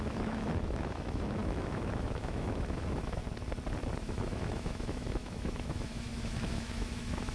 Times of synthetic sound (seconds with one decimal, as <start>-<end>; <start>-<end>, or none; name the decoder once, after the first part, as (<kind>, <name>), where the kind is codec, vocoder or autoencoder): 0.0-3.2 (autoencoder, DAC-VAE); 4.0-7.3